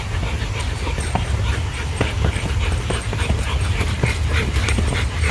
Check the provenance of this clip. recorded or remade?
remade